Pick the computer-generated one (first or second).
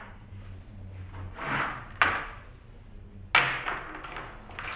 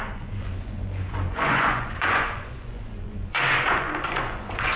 second